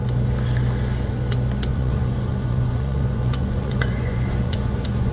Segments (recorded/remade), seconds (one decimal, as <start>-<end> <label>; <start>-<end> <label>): 0.0-1.7 recorded; 1.7-5.1 remade